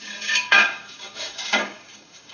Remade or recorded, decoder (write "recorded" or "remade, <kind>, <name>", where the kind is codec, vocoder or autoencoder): remade, codec, DAC